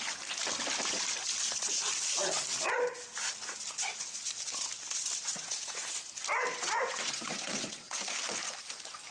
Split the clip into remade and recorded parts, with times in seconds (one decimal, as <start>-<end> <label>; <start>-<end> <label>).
0.0-5.3 recorded; 5.3-5.8 remade; 5.8-6.5 recorded; 6.5-8.0 remade; 8.0-9.1 recorded